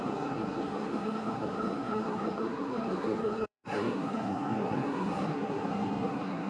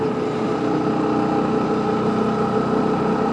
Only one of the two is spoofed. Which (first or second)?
first